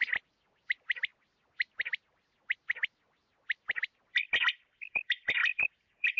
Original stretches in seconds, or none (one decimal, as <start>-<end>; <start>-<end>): 1.1-4.8